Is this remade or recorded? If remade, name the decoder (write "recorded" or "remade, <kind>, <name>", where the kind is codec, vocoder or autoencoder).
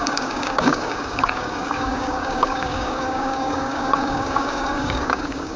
remade, codec, DAC